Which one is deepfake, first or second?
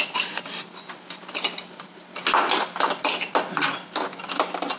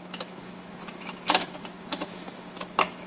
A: second